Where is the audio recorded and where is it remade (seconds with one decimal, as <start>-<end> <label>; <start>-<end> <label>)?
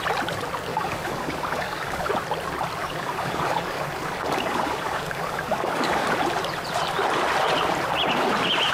0.0-0.7 recorded; 0.7-2.1 remade; 2.1-2.8 recorded; 2.8-6.1 remade; 6.1-8.7 recorded